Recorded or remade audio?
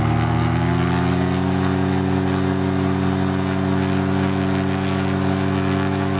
recorded